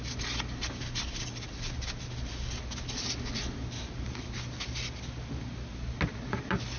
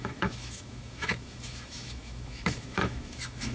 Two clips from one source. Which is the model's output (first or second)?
second